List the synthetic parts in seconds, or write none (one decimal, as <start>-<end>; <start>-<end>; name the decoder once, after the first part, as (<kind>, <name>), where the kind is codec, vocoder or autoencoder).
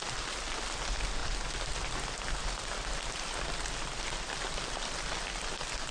none